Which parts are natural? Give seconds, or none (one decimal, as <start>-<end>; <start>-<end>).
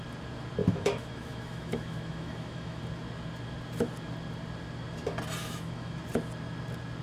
0.0-0.6; 2.8-5.4; 6.0-7.0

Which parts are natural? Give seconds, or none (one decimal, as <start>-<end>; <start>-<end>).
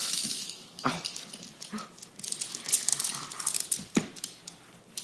0.9-5.0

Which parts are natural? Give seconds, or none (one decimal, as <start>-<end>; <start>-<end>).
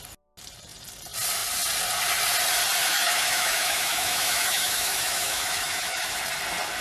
0.0-2.8; 6.2-6.8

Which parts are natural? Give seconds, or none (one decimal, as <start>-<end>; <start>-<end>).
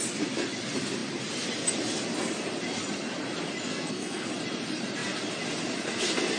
0.0-3.7; 4.3-6.4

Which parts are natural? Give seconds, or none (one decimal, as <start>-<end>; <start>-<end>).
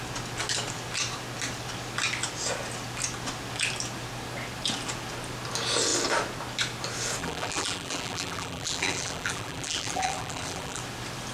0.0-7.2; 10.8-11.3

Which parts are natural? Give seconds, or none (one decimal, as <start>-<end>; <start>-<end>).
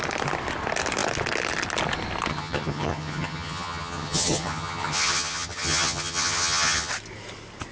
0.0-2.3; 6.9-7.7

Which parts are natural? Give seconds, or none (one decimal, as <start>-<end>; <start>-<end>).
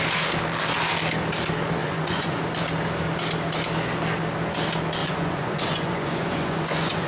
0.0-1.8; 2.4-5.0